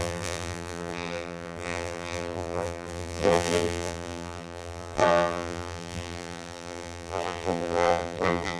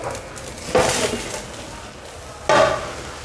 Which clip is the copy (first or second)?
first